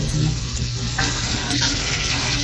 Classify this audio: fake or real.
fake